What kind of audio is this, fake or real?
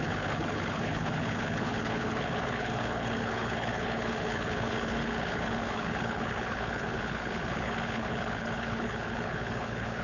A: fake